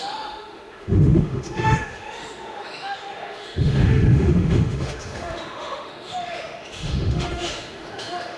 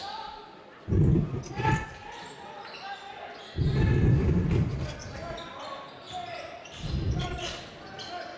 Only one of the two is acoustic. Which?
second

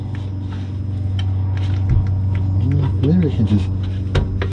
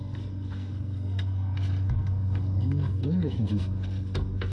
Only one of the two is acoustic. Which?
first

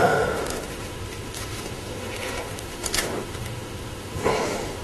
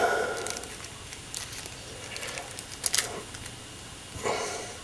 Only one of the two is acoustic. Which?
second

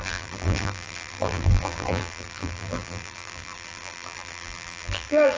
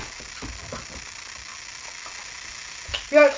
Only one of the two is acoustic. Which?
second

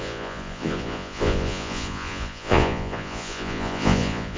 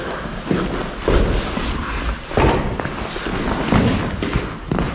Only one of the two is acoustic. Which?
second